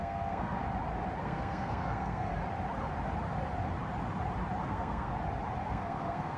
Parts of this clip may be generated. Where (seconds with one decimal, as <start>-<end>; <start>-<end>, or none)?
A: 0.0-0.6; 1.2-2.3; 4.6-5.1; 5.6-6.4